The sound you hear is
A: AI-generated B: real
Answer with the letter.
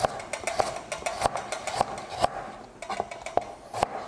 B